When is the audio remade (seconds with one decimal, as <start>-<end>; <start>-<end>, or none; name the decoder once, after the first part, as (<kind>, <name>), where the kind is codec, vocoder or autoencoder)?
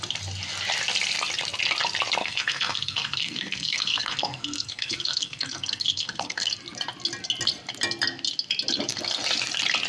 2.2-6.5 (codec, SNAC)